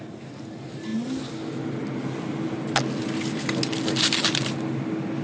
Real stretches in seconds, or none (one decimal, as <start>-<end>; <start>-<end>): 0.0-5.2